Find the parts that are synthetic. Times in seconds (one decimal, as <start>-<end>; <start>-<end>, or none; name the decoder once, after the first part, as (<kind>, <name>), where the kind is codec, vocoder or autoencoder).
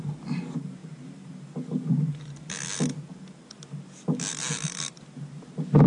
none